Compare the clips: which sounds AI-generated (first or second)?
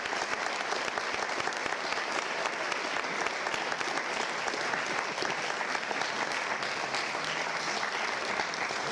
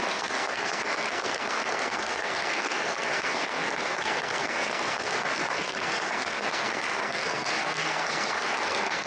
second